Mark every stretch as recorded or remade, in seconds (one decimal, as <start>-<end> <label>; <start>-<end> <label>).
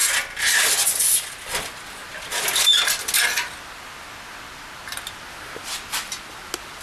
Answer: 0.0-6.8 recorded